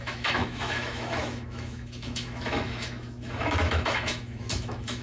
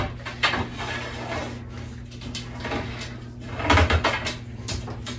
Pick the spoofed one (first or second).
first